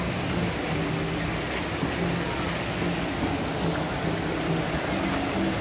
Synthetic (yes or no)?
no